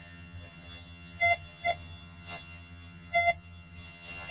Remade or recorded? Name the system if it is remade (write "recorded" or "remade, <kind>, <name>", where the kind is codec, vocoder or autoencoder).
remade, vocoder, HiFi-GAN